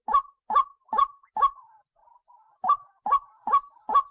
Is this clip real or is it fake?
real